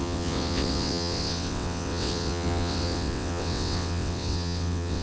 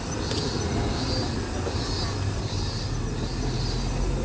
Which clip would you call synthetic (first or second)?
first